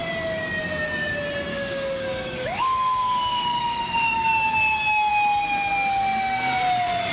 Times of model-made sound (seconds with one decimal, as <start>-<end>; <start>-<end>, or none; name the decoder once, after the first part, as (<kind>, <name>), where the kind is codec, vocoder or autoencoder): 1.5-5.1 (codec, DAC)